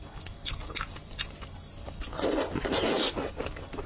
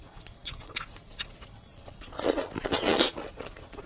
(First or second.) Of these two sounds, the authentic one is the first